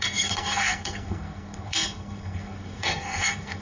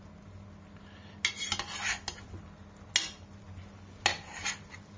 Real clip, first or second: second